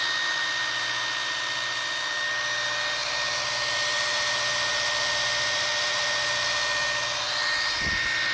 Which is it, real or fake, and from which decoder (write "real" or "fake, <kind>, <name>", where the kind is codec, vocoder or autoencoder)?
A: real